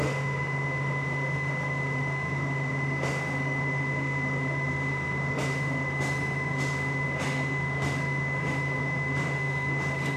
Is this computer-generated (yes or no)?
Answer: yes